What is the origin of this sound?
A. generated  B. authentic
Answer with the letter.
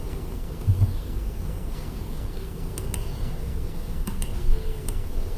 A